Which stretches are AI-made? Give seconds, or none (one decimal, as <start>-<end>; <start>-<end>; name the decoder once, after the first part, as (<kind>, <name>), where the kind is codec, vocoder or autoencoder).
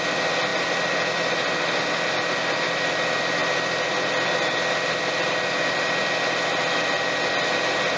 none